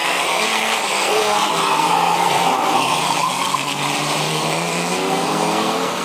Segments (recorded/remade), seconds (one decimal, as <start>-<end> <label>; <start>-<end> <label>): 0.0-3.8 remade; 3.8-4.3 recorded; 4.3-6.0 remade